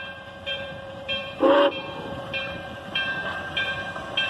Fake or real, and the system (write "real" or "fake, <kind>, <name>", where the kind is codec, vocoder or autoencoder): fake, vocoder, BigVGAN v2